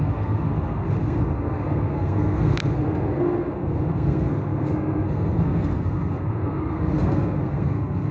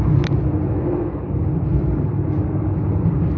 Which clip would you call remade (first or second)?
first